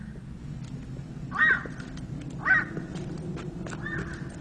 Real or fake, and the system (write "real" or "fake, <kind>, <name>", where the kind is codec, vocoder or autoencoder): real